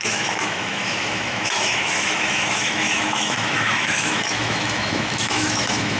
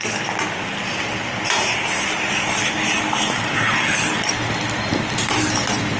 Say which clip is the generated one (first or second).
first